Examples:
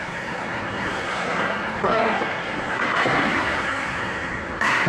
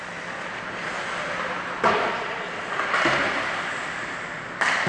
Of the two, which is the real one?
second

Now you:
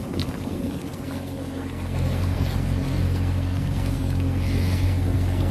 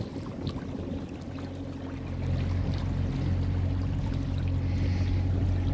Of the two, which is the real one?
second